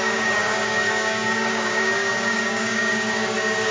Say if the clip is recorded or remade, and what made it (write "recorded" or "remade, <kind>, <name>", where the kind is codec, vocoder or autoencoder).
remade, codec, DAC